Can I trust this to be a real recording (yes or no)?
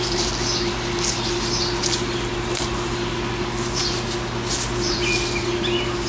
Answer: yes